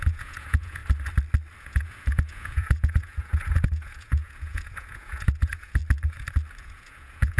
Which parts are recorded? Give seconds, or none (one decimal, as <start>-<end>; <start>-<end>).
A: 0.8-1.6; 5.8-6.6